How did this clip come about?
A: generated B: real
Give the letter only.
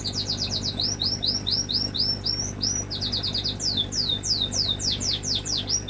B